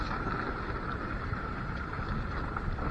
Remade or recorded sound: recorded